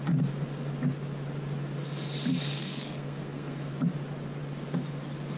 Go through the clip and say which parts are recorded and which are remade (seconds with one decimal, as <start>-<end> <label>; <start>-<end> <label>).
0.0-2.4 recorded; 2.4-3.7 remade; 3.7-5.4 recorded